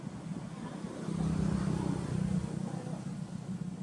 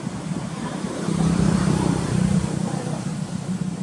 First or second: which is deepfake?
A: second